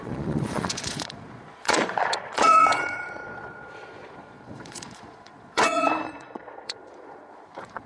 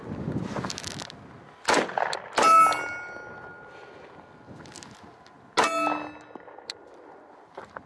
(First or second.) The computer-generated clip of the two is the first